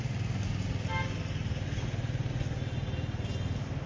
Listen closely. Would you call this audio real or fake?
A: real